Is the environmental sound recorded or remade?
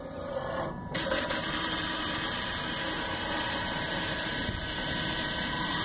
remade